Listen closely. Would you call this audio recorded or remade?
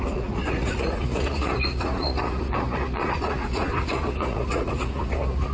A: remade